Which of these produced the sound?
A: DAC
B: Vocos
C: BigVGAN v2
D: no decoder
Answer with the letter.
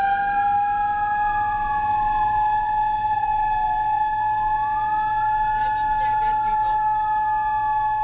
D